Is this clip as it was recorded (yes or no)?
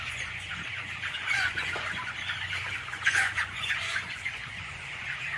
no